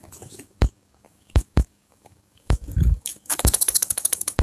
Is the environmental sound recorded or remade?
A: remade